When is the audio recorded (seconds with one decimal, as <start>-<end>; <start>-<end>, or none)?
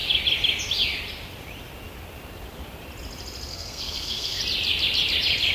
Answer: 0.0-3.5; 4.4-5.5